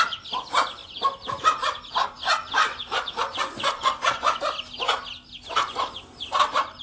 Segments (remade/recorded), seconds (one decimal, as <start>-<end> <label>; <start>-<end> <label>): 0.0-2.7 recorded; 2.7-4.4 remade; 4.4-6.8 recorded